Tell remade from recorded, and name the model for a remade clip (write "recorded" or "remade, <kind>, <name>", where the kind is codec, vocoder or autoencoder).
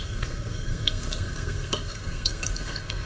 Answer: remade, codec, SNAC